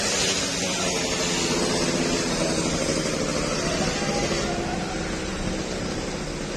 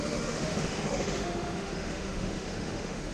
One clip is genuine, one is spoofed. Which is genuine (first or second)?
first